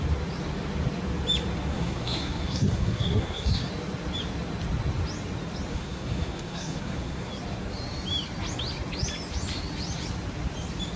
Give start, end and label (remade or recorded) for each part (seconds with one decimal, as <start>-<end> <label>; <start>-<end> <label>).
0.0-1.7 recorded; 1.7-3.7 remade; 3.7-5.7 recorded; 5.7-7.3 remade; 7.3-11.0 recorded